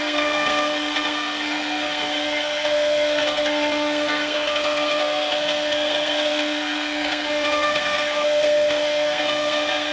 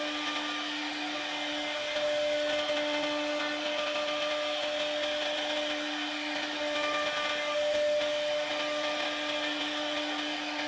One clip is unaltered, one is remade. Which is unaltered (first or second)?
second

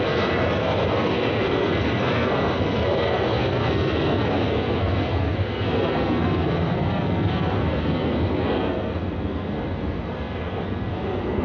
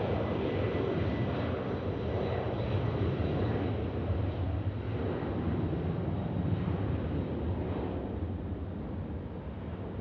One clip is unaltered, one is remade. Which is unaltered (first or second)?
second